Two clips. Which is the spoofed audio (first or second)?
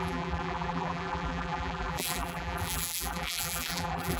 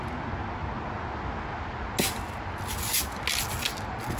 first